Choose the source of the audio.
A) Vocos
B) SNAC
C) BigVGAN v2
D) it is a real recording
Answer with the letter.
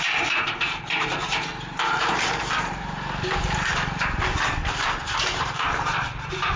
C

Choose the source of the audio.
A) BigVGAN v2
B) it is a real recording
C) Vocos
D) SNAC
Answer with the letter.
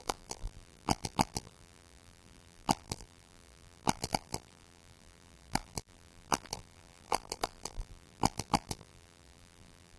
A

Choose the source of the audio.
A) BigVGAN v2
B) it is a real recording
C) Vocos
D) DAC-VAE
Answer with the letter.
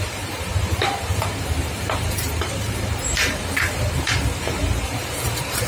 A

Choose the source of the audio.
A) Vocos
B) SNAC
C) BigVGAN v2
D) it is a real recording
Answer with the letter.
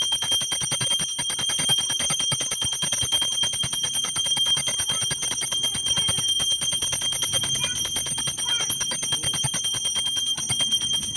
D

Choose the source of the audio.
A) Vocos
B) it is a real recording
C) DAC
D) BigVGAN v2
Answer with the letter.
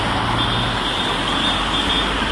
B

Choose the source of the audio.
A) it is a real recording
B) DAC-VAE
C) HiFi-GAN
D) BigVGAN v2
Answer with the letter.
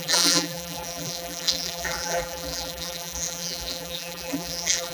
D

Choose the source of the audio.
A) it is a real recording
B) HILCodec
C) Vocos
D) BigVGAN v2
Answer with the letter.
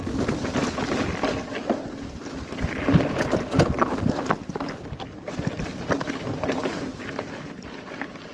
A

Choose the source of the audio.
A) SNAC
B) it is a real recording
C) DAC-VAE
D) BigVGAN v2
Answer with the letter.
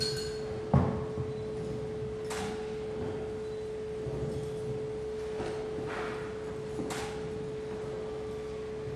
B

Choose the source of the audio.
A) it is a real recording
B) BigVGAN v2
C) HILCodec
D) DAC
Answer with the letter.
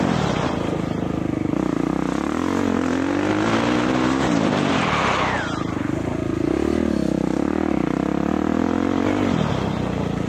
A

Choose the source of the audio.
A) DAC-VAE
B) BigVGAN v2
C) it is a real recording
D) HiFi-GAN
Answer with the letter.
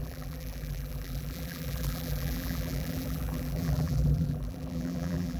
B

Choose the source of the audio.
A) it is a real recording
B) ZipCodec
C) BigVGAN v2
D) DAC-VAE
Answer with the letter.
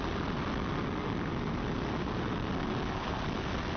A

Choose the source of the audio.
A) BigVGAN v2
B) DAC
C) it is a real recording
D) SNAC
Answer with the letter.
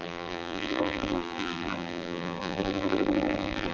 A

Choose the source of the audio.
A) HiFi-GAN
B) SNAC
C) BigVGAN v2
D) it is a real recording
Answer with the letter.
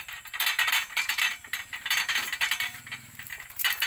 C